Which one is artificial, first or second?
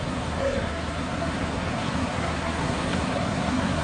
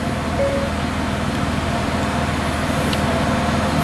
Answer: first